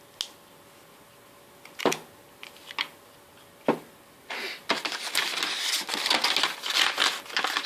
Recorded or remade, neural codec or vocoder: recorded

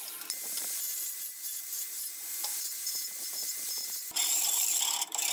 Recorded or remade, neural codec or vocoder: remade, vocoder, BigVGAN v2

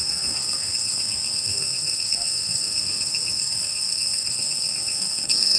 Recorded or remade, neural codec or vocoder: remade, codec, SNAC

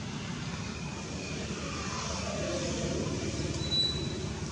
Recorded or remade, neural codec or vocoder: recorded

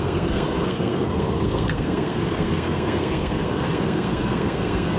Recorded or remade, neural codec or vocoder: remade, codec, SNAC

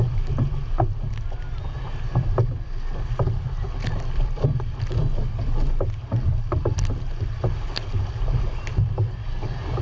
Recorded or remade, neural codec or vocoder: recorded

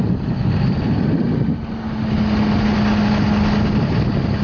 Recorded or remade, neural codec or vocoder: recorded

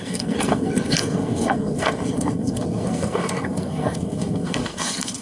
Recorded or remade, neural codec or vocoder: remade, codec, SNAC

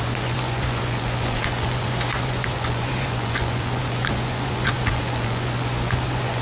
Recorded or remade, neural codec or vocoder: remade, vocoder, Vocos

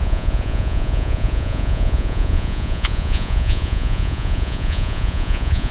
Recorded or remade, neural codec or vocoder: remade, vocoder, Vocos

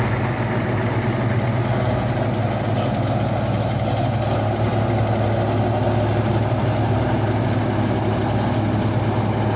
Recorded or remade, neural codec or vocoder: recorded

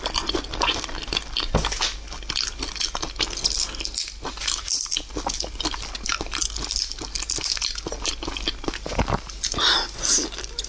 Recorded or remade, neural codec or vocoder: recorded